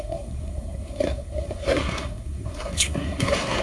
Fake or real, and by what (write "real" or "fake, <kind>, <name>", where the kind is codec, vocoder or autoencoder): fake, codec, SNAC